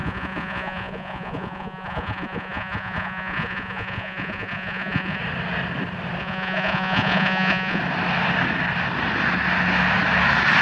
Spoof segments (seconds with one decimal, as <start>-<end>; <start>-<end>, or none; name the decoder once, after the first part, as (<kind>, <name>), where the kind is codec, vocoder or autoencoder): 0.0-5.2 (vocoder, Vocos); 6.2-7.8